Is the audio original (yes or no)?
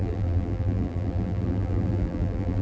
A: no